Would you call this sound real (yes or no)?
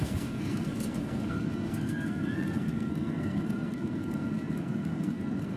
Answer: no